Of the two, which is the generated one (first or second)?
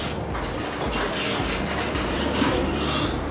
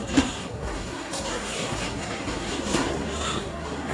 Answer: second